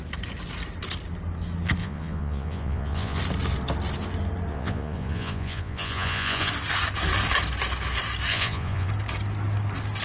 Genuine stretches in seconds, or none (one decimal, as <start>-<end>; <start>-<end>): 0.0-1.8; 3.2-4.5; 6.5-8.3; 8.9-10.0